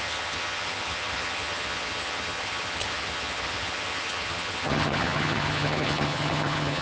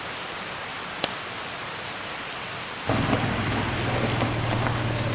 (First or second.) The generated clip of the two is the first